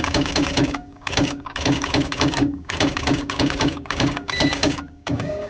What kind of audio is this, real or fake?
fake